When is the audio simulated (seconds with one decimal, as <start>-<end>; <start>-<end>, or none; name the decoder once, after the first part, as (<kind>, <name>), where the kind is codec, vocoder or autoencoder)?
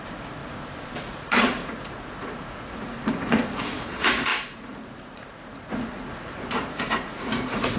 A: 0.0-0.4 (vocoder, Vocos); 1.0-7.8